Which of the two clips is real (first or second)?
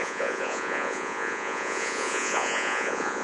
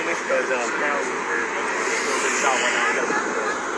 second